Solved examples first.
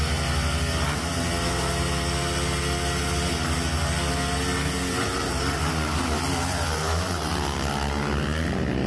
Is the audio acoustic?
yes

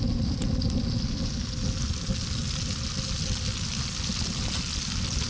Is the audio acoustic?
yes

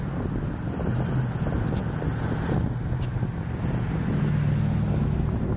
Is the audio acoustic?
yes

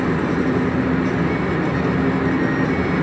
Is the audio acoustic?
yes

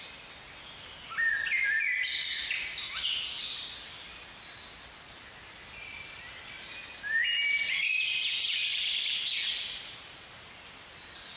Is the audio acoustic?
yes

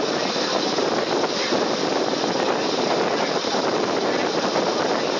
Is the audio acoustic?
yes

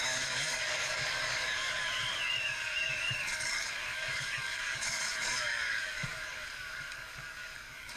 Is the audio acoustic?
no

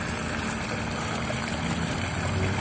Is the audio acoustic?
yes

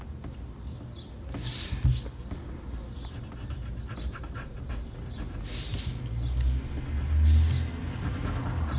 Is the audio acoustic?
yes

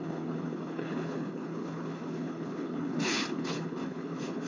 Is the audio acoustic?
no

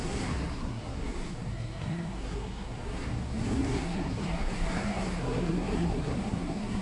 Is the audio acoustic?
no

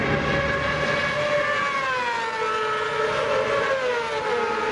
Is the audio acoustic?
yes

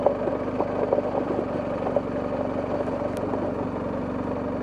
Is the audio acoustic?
yes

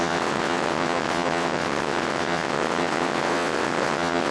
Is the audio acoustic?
no